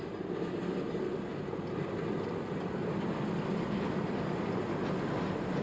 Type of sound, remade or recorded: recorded